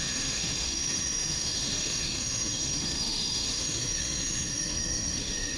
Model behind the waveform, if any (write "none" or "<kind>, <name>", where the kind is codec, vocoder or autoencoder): autoencoder, DAC-VAE